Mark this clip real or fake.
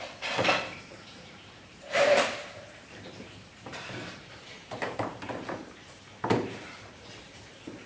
fake